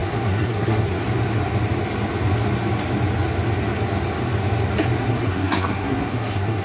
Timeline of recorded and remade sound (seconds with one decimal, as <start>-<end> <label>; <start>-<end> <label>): 0.0-1.0 remade; 1.0-5.0 recorded; 5.0-6.6 remade